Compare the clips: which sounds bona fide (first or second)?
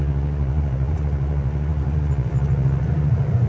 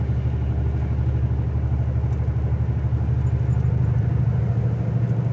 second